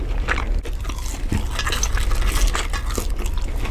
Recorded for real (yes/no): yes